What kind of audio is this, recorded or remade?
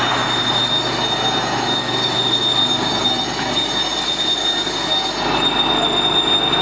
recorded